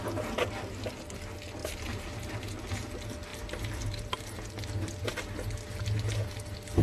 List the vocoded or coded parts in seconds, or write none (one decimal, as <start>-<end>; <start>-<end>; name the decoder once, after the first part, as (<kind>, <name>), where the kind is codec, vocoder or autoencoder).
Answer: 1.6-2.6 (vocoder, BigVGAN v2); 3.3-4.1